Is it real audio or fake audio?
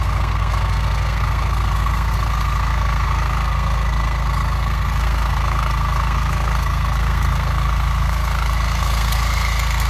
fake